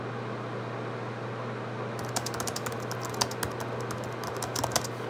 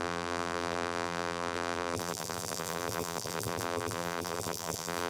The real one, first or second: first